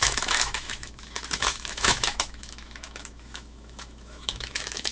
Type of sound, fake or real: fake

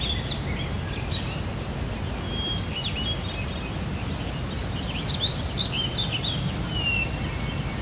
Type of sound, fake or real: real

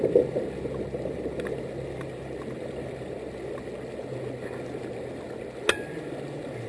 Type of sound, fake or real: real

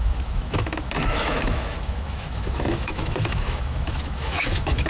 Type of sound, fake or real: fake